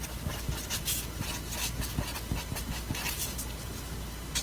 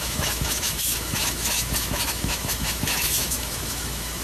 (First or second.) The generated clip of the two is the second